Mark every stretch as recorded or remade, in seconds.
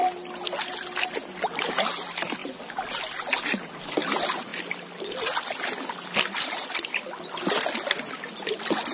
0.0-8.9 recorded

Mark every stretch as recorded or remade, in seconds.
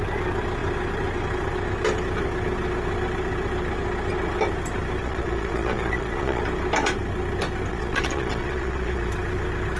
0.0-5.0 recorded; 5.0-6.4 remade; 6.4-7.7 recorded; 7.7-9.1 remade; 9.1-9.8 recorded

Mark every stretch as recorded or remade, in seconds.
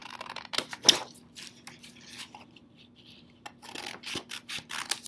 0.0-5.1 recorded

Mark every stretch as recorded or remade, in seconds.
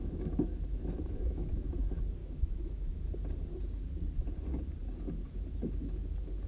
0.0-1.5 remade; 1.5-2.2 recorded; 2.2-3.0 remade; 3.0-6.5 recorded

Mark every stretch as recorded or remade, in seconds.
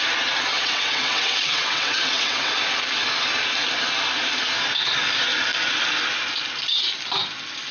0.0-0.5 recorded; 0.5-2.5 remade; 2.5-7.7 recorded